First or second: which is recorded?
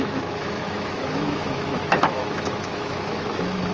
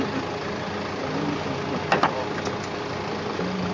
second